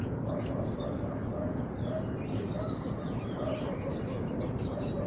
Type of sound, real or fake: fake